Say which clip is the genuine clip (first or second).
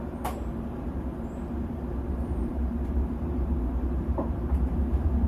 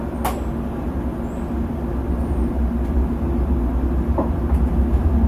second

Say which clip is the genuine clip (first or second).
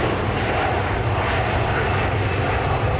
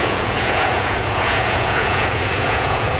first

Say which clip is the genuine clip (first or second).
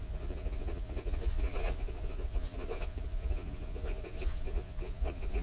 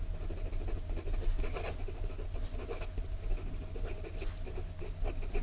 second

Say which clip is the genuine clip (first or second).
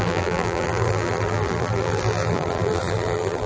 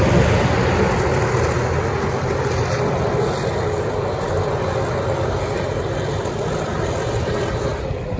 second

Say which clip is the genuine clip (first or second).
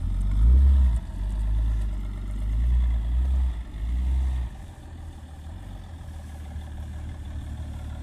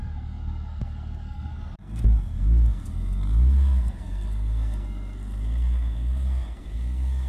first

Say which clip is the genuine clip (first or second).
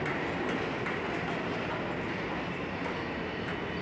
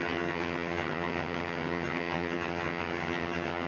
first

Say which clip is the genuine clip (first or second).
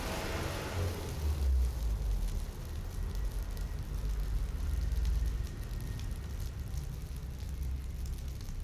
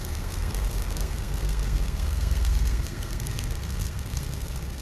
first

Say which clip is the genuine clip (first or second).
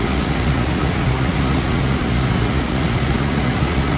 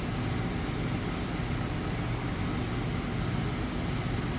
second